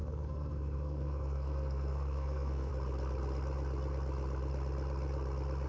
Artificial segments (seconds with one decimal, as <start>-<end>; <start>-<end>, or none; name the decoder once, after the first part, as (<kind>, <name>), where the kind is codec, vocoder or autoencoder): 0.0-2.7 (codec, SNAC)